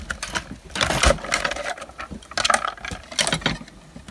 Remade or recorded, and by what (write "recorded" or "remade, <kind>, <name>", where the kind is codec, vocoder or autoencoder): recorded